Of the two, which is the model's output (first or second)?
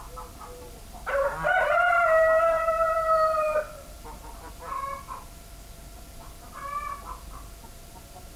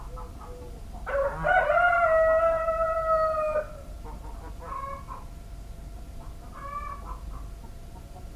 first